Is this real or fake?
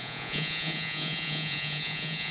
fake